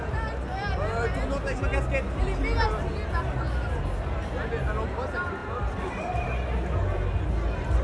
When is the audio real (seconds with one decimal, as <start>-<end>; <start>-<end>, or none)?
0.0-7.8